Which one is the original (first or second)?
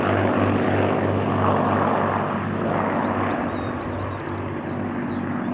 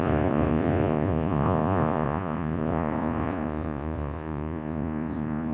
first